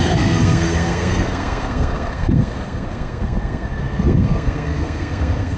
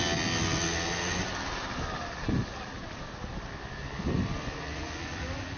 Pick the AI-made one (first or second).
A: first